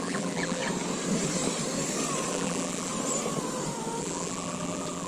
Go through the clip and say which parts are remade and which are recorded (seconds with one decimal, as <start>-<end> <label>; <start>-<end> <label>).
0.0-0.6 remade; 0.6-2.3 recorded; 2.3-2.9 remade; 2.9-4.0 recorded; 4.0-5.1 remade